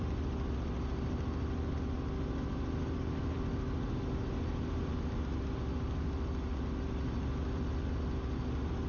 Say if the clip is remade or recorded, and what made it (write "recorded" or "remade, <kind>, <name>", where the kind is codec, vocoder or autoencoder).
recorded